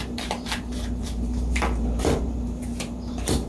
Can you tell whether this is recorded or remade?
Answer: remade